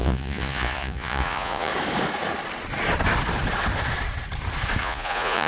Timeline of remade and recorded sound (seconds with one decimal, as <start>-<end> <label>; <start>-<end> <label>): 0.0-1.7 remade; 1.7-4.8 recorded; 4.8-5.5 remade